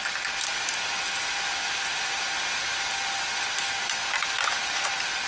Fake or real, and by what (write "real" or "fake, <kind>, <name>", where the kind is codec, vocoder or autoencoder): fake, vocoder, BigVGAN v2